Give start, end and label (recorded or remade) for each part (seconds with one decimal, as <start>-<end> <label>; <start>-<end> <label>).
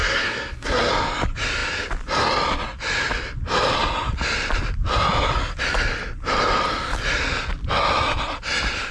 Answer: 0.0-0.9 remade; 0.9-8.9 recorded